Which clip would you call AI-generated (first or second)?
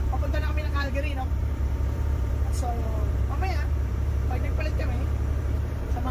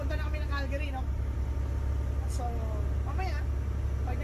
first